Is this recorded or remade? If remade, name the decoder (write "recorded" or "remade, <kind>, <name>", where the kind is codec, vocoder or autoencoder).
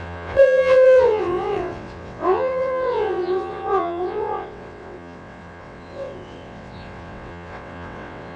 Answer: remade, vocoder, WaveNeXt